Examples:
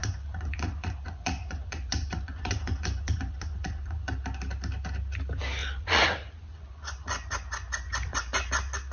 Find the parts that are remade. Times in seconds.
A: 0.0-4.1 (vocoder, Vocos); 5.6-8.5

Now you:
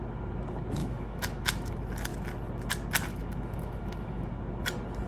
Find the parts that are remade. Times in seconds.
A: 0.8-1.7 (autoencoder, DAC-VAE); 3.1-4.3

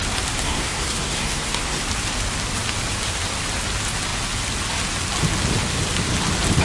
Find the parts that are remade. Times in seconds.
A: 0.4-1.8 (codec, SNAC)

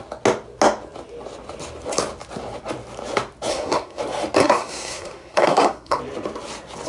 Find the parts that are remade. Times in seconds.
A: 3.5-4.0 (codec, SNAC); 4.4-6.0

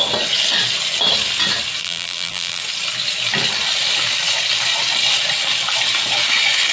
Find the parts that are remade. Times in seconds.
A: 1.8-2.6 (vocoder, BigVGAN v2)